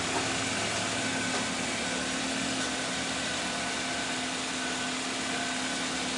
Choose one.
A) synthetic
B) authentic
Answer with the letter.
B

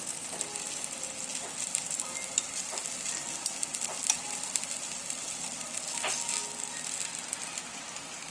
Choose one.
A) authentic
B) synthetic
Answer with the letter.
A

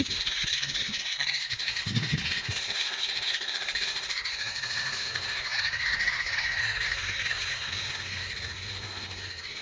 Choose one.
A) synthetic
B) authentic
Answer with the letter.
A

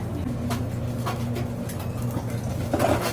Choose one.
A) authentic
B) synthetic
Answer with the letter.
A